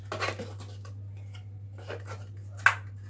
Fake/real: real